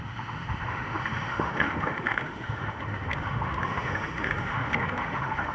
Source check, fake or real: fake